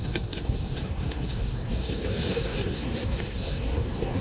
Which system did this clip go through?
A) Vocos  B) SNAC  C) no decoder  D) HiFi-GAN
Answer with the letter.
B